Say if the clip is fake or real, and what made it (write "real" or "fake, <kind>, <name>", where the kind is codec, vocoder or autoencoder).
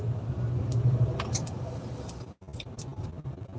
real